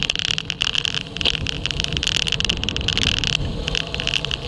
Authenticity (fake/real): real